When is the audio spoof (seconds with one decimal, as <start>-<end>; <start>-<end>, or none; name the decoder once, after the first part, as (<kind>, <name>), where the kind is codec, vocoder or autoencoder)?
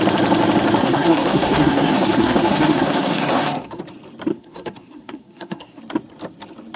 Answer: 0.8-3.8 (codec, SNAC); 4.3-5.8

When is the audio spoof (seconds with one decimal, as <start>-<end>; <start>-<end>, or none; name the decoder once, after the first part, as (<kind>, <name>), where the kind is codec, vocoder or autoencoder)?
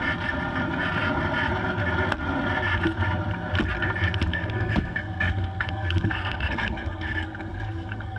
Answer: 4.3-8.2 (codec, SNAC)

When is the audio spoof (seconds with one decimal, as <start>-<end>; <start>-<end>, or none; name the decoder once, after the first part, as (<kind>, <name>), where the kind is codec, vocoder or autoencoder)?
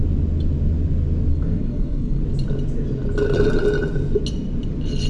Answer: 1.3-2.2 (codec, SNAC)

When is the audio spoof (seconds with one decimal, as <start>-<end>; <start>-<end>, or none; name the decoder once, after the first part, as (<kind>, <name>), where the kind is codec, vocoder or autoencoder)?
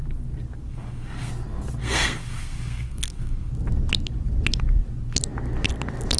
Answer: 0.7-1.3 (codec, SNAC); 1.8-3.5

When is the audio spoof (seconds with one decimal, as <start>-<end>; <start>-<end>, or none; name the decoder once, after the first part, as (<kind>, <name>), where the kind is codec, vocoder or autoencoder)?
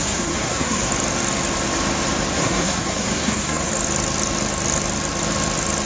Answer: 0.0-0.9 (codec, SNAC); 2.3-3.7